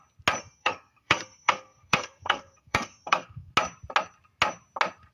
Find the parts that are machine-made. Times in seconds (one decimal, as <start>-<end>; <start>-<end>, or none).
0.4-3.5